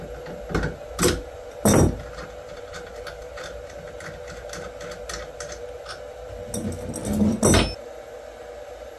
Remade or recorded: recorded